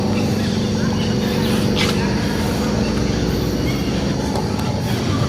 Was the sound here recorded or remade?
recorded